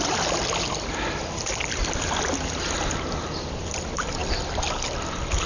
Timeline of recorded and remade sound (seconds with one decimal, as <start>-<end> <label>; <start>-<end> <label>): 0.0-5.5 recorded